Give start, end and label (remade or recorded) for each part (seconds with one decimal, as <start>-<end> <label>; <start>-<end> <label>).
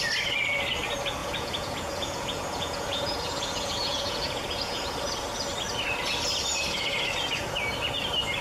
0.0-1.2 recorded; 1.2-4.9 remade; 4.9-8.4 recorded